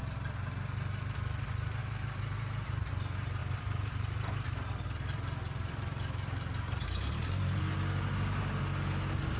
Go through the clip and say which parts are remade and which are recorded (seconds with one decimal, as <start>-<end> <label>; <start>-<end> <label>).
0.0-1.8 recorded; 1.8-2.9 remade; 2.9-3.4 recorded; 3.4-7.6 remade; 7.6-9.4 recorded